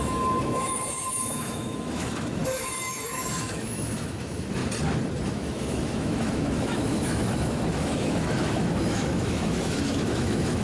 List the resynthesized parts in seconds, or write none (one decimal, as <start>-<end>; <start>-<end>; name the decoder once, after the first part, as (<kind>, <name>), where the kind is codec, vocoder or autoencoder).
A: 0.0-4.6 (autoencoder, DAC-VAE); 5.3-10.6